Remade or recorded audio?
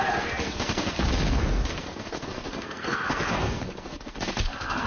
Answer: remade